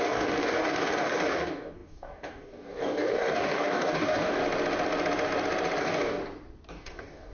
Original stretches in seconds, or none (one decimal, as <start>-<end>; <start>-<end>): 4.4-5.8; 6.2-6.7

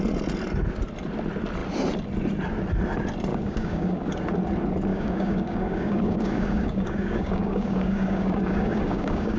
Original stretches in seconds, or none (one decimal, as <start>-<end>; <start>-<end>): 0.0-3.3; 4.1-4.9

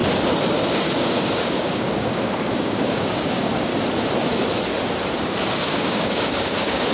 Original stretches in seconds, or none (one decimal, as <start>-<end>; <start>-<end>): 0.0-1.0; 3.7-5.5

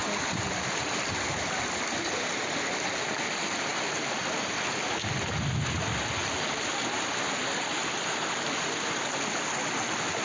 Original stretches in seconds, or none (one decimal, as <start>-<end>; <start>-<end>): 0.0-10.2

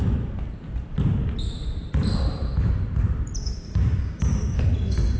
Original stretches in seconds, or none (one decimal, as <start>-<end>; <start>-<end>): 0.0-3.4; 4.6-5.2

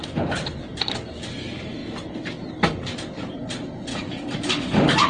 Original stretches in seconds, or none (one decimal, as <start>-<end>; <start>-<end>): 0.0-3.9

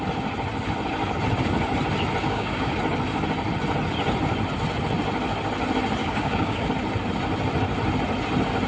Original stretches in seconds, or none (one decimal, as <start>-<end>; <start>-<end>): 0.0-2.2; 2.7-6.0; 6.7-8.7